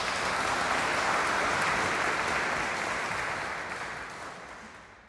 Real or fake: real